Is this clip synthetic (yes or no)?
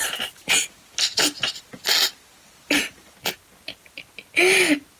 no